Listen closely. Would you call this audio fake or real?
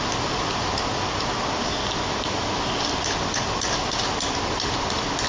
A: real